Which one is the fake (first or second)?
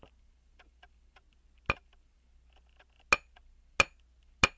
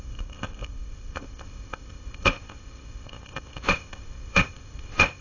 second